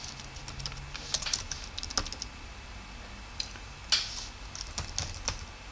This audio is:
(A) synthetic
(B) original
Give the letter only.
B